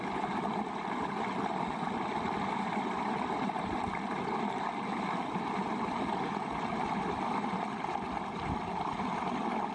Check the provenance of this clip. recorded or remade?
recorded